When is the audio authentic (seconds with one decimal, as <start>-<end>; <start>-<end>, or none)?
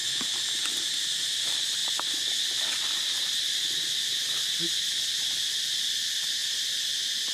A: 0.0-1.8; 4.6-7.3